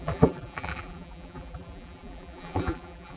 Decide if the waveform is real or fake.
fake